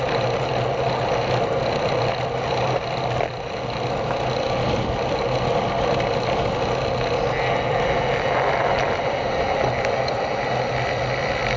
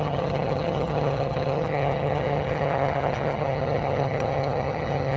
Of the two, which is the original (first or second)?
first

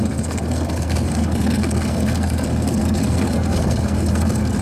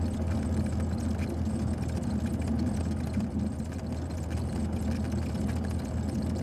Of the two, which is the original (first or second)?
second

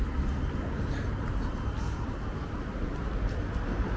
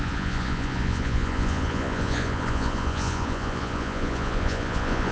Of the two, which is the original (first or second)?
first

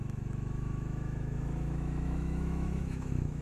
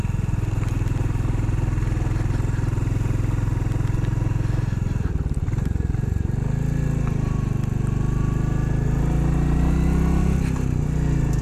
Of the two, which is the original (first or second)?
second